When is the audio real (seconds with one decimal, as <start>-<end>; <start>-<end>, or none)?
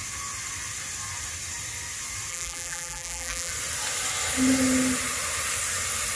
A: 0.0-2.3; 3.5-6.2